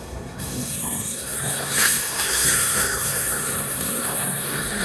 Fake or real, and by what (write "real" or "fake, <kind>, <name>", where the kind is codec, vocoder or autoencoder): fake, codec, SNAC